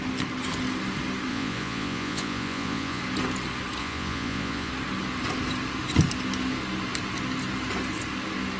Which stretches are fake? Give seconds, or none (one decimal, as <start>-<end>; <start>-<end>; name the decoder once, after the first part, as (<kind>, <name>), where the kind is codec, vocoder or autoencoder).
1.3-3.0 (vocoder, Vocos); 3.8-4.7